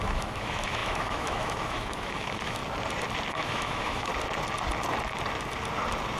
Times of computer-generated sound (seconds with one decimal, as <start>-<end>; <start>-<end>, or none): 0.0-2.6; 3.3-4.1